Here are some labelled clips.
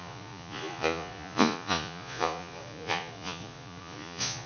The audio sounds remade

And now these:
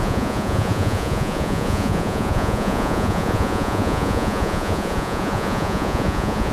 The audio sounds remade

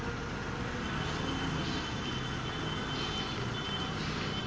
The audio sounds recorded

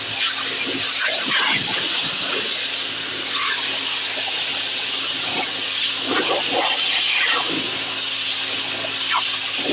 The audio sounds recorded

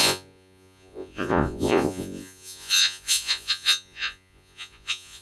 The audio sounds remade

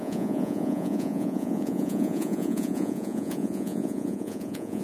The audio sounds remade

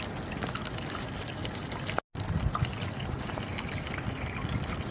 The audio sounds recorded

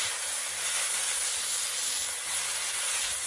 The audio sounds recorded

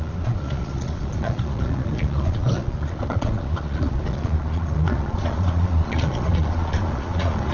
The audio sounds remade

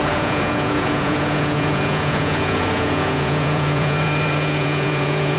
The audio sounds remade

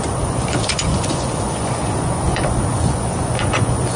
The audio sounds remade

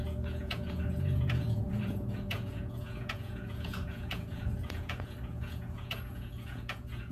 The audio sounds remade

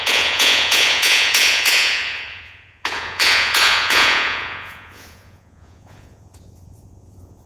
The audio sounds remade